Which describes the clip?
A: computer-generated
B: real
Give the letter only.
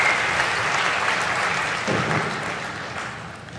B